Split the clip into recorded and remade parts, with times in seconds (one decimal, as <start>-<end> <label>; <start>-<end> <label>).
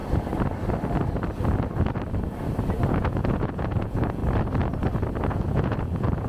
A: 0.0-2.9 recorded; 2.9-4.2 remade; 4.2-5.3 recorded; 5.3-6.3 remade